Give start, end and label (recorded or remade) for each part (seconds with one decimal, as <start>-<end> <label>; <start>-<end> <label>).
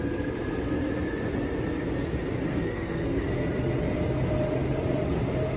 0.0-2.5 recorded; 2.5-3.2 remade; 3.2-5.6 recorded